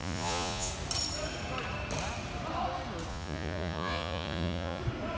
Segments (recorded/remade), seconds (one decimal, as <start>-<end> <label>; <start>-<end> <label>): 0.0-0.7 remade; 0.7-3.1 recorded; 3.1-4.8 remade; 4.8-5.2 recorded